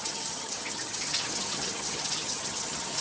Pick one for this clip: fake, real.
fake